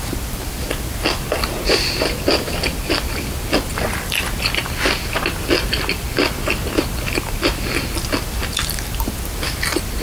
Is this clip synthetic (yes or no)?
yes